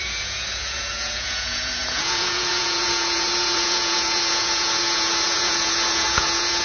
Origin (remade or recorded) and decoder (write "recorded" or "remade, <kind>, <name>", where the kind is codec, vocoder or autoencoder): remade, vocoder, Vocos